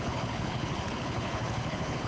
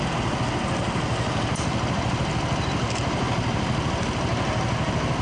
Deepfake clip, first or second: first